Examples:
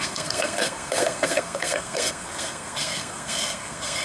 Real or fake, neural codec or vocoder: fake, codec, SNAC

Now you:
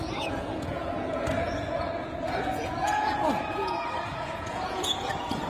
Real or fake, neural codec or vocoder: fake, vocoder, Vocos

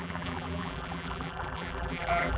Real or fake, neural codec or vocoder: fake, vocoder, BigVGAN v2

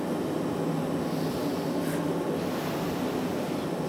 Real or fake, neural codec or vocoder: real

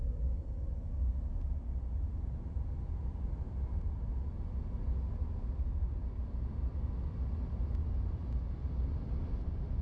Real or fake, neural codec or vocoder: real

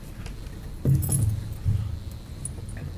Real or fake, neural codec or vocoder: real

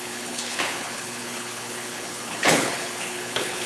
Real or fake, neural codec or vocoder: fake, codec, HILCodec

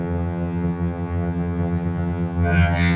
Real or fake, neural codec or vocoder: fake, vocoder, HiFi-GAN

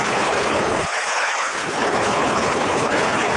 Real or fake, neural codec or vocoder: fake, codec, HILCodec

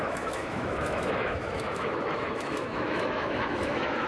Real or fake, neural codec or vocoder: fake, autoencoder, DAC-VAE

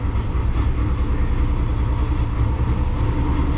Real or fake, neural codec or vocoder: real